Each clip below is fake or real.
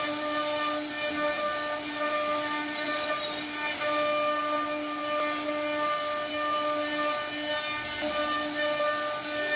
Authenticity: real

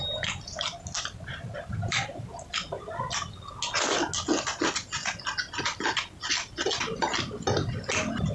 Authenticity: real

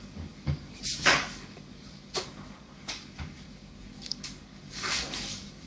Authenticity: fake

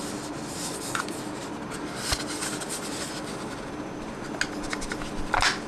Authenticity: real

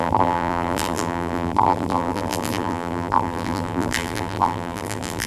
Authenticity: fake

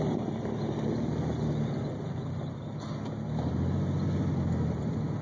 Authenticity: real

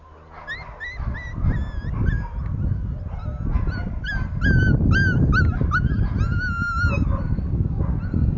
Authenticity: real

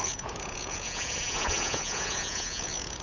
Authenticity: fake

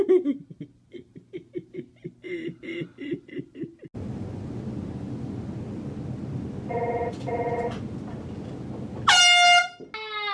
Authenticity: real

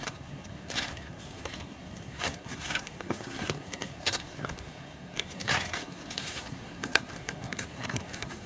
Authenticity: fake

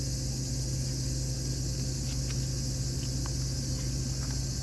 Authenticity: real